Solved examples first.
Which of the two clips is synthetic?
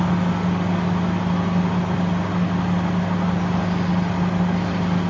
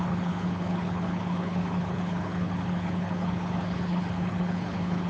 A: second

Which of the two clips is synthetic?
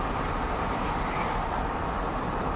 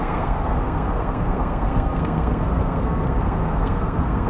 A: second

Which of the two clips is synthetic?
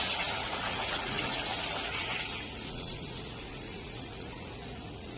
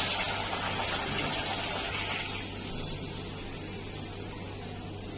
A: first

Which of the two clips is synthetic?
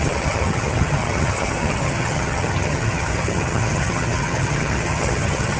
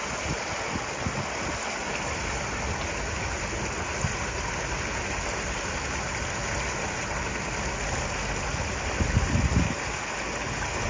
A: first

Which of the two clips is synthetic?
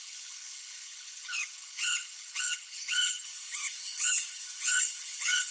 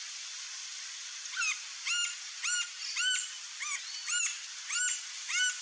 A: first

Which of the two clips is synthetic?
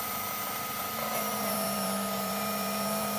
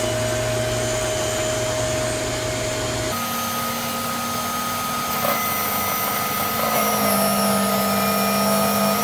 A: first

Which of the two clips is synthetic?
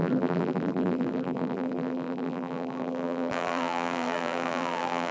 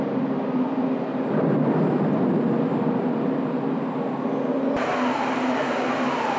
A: first